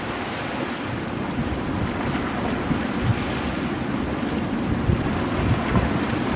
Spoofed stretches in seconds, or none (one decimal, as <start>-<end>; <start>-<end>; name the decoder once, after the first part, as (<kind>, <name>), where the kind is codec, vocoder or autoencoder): none